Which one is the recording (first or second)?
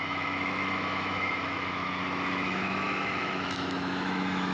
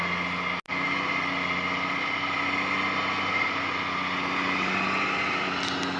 second